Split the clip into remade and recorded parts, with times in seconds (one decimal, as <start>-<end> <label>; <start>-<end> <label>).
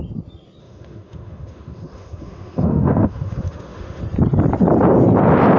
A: 0.0-0.6 recorded; 0.6-4.0 remade; 4.0-5.6 recorded